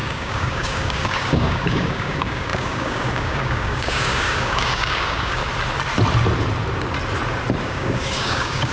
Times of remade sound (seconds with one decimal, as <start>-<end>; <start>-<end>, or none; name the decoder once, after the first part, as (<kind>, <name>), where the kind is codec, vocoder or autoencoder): 0.0-5.4 (codec, DAC); 7.6-8.7